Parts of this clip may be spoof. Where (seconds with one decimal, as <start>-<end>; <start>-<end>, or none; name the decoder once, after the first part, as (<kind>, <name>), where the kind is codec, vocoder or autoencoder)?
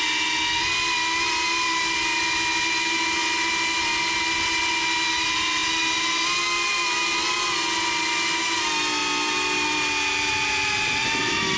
none